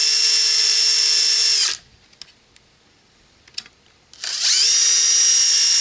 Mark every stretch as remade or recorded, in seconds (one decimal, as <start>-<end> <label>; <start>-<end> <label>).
0.0-5.8 recorded